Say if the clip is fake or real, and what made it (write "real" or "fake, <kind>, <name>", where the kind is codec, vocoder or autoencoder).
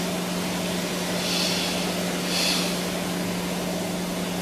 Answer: real